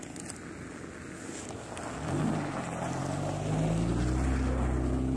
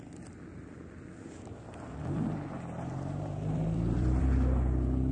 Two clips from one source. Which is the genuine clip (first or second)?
first